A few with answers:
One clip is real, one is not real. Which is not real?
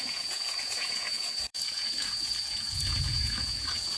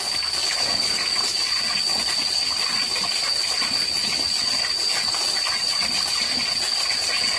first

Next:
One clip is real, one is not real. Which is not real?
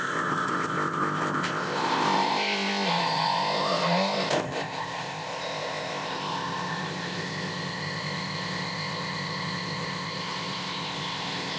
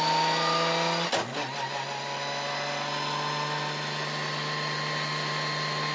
first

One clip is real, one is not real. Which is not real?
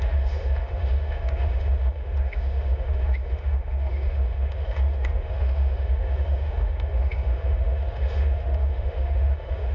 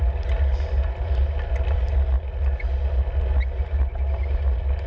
first